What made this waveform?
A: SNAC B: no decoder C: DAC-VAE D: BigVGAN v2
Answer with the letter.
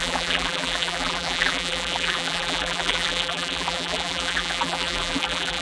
D